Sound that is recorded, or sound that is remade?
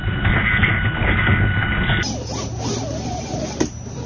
recorded